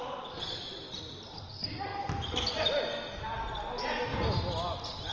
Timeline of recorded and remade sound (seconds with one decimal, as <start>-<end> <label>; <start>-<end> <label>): 0.0-5.1 recorded